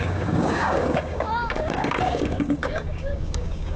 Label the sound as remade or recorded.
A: remade